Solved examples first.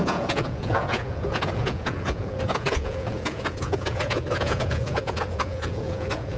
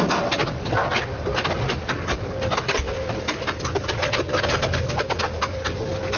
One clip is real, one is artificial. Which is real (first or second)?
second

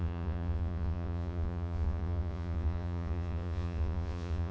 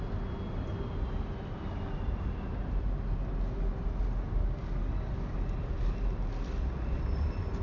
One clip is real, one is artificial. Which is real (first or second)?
second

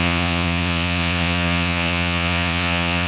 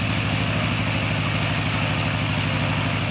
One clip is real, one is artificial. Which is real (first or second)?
second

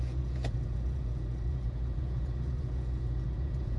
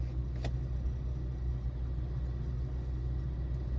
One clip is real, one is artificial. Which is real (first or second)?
second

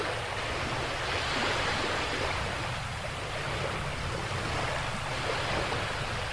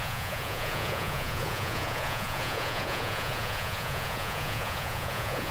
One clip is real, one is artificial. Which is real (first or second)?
first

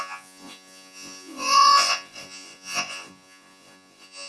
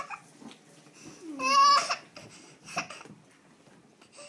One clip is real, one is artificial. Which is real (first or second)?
second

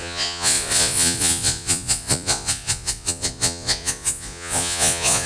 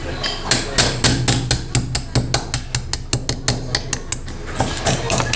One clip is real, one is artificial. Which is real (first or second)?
second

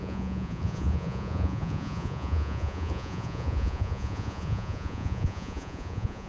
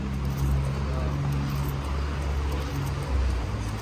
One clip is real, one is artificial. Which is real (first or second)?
second